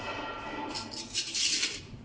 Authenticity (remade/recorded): recorded